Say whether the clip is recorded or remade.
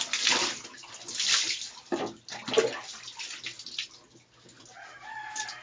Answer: recorded